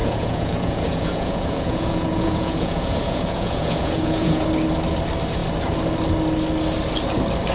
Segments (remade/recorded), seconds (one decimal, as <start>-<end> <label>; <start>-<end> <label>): 0.0-4.5 remade; 4.5-7.5 recorded